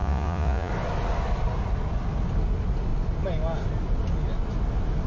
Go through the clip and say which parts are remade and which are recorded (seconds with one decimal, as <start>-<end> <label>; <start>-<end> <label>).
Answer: 0.0-0.7 remade; 0.7-5.1 recorded

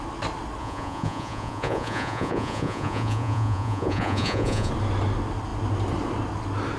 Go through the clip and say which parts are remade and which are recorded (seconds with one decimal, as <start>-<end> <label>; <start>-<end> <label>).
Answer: 0.0-0.6 recorded; 0.6-4.7 remade; 4.7-6.8 recorded

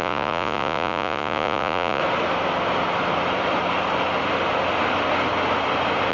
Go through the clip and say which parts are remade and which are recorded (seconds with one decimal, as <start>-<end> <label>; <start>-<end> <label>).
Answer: 0.0-2.0 remade; 2.0-6.1 recorded

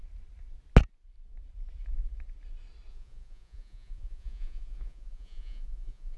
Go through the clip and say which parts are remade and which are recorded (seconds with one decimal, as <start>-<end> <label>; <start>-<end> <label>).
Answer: 0.0-2.9 recorded; 2.9-6.2 remade

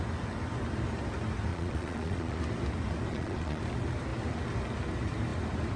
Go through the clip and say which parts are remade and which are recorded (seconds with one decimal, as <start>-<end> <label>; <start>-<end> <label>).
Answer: 0.0-1.5 recorded; 1.5-2.4 remade; 2.4-3.1 recorded; 3.1-3.6 remade; 3.6-5.8 recorded

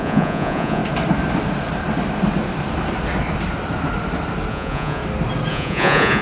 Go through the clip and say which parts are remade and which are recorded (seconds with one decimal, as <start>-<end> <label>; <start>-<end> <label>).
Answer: 0.0-0.8 remade; 0.8-4.5 recorded; 4.5-5.0 remade; 5.0-5.5 recorded; 5.5-6.2 remade